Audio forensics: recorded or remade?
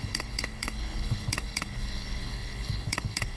remade